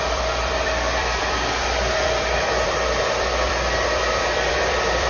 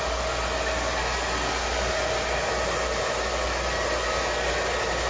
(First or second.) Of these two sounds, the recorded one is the second